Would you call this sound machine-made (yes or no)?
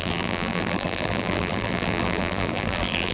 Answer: yes